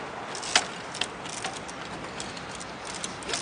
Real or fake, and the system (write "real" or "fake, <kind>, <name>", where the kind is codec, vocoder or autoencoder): real